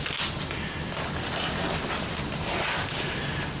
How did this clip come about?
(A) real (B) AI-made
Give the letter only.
A